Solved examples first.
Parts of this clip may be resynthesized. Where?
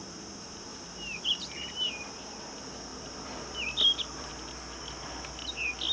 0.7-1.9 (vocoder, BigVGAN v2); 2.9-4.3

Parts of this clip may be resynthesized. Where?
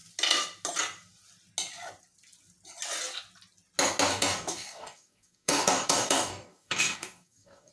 4.1-7.7 (codec, DAC)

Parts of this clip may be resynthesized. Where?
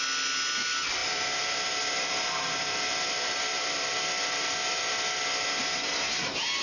1.0-3.8 (vocoder, BigVGAN v2)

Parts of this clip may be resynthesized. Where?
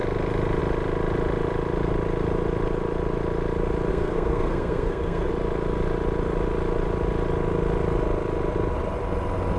3.9-5.3 (codec, SNAC)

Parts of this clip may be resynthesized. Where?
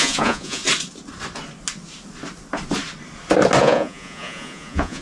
0.0-0.6 (vocoder, Vocos); 3.6-5.0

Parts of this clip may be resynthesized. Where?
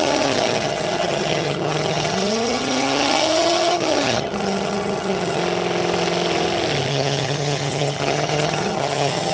0.0-5.4 (vocoder, HiFi-GAN); 6.9-9.3